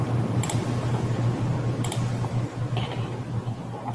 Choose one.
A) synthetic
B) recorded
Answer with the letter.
B